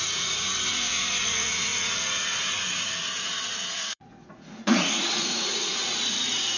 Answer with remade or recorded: remade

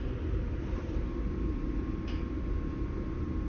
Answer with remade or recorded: recorded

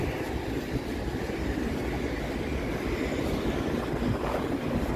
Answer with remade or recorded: recorded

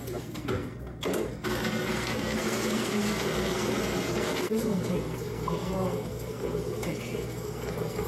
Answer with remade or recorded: remade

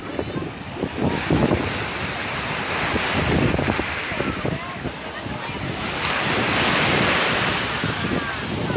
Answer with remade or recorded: recorded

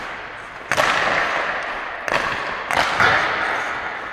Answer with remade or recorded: recorded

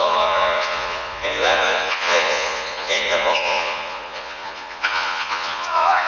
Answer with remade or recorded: remade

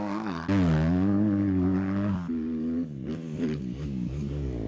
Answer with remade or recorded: remade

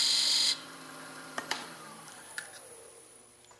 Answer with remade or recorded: remade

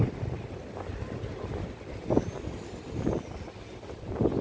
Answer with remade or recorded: recorded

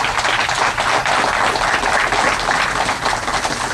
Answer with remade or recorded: recorded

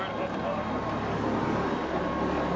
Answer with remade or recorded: recorded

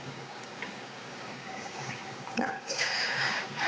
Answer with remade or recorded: remade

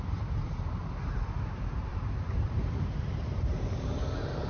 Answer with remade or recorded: remade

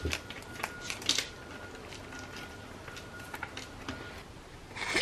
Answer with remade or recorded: recorded